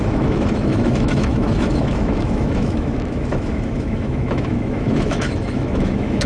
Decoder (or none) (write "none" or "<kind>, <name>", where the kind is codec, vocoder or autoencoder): autoencoder, DAC-VAE